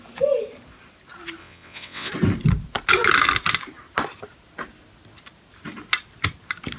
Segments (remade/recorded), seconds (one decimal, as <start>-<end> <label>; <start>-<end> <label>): 0.0-1.4 recorded; 1.4-2.1 remade; 2.1-6.8 recorded